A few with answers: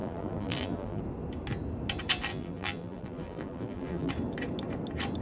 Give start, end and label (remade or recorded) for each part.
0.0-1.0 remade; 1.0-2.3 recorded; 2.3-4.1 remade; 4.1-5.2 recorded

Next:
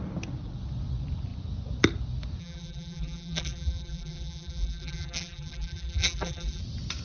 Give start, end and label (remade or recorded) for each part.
0.0-2.4 recorded; 2.4-6.6 remade; 6.6-7.0 recorded

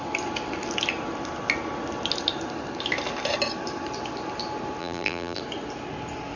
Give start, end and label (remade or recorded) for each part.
0.0-4.8 recorded; 4.8-5.4 remade; 5.4-6.4 recorded

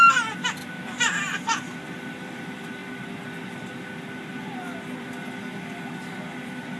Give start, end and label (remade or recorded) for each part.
0.0-6.8 recorded